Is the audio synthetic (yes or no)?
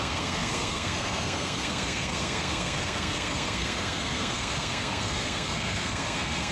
yes